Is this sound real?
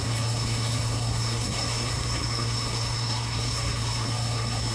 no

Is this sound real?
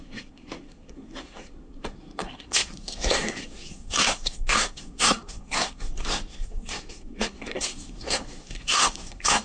no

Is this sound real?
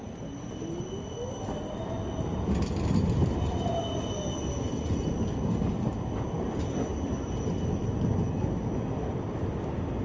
yes